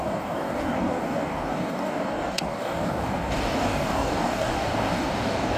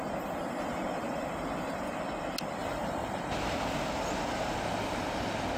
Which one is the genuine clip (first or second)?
second